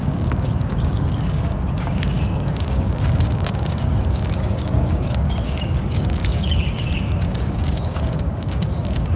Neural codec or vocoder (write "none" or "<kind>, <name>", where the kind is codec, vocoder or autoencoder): codec, DAC